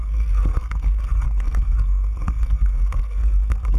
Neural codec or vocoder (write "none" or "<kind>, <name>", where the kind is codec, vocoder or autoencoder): codec, SNAC